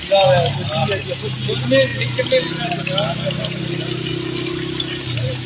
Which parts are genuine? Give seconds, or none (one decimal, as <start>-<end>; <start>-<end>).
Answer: 0.0-5.5